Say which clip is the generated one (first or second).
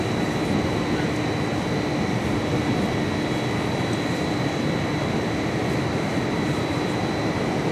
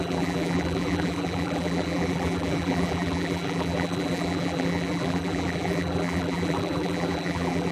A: second